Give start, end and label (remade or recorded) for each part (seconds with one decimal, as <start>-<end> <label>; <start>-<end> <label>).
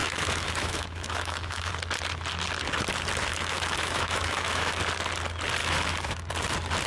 0.0-1.7 remade; 1.7-3.3 recorded; 3.3-4.8 remade; 4.8-5.6 recorded; 5.6-6.3 remade; 6.3-6.9 recorded